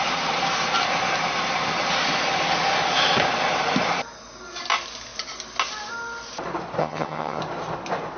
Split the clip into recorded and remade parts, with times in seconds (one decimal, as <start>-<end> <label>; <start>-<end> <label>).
0.0-6.8 recorded; 6.8-7.4 remade; 7.4-8.2 recorded